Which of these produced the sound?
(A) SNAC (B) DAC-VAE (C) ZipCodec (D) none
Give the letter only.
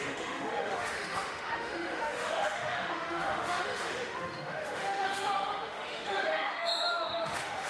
B